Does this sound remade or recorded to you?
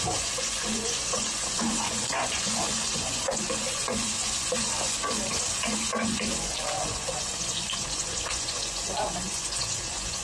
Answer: remade